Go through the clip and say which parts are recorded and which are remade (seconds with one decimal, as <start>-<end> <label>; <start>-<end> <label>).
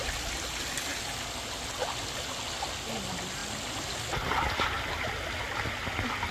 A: 0.0-6.3 recorded